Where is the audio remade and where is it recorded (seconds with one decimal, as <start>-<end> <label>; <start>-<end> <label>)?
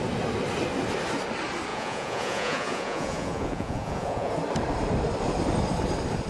0.0-1.7 recorded; 1.7-4.3 remade; 4.3-6.3 recorded